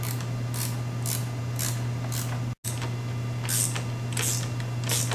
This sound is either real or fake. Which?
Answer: real